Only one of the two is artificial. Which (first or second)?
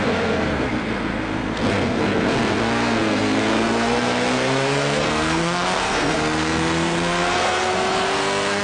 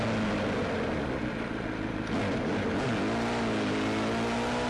first